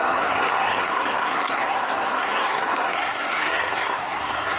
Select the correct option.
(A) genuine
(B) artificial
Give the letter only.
B